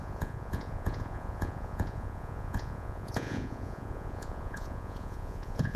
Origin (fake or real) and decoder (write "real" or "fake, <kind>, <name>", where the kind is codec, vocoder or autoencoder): fake, vocoder, Vocos